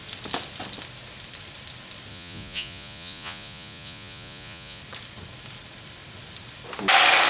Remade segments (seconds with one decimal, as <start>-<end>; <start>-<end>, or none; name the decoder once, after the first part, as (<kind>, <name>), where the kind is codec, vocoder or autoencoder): 2.1-4.8 (vocoder, Vocos)